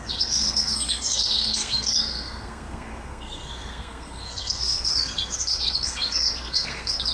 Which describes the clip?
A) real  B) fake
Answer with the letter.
B